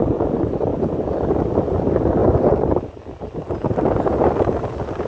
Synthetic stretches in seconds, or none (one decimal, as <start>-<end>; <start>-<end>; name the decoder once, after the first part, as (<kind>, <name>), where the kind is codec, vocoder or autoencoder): none